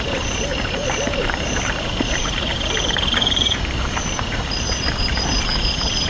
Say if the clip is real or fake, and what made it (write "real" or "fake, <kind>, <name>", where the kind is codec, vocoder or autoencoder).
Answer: fake, vocoder, BigVGAN v2